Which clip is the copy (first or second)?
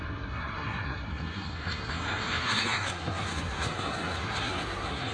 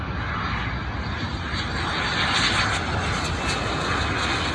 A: first